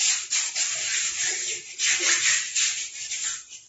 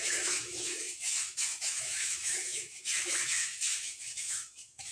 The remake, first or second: second